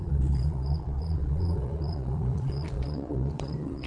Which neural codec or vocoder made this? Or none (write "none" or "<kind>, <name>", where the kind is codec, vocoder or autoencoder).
vocoder, Vocos